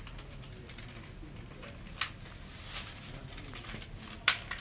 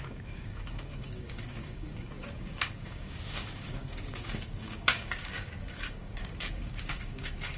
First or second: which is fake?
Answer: second